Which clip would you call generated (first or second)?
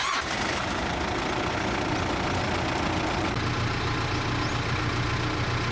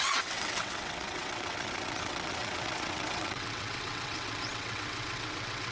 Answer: second